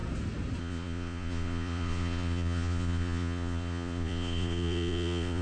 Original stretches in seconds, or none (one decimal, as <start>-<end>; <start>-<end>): 0.0-0.6